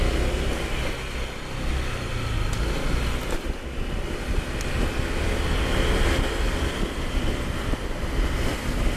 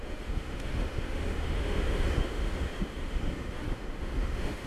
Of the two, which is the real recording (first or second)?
first